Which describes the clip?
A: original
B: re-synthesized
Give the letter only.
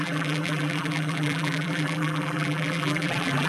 B